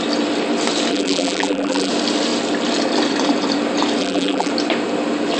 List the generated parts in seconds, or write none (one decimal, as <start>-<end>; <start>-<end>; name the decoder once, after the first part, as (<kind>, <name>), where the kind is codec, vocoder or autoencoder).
0.9-1.9 (vocoder, BigVGAN v2); 4.0-4.5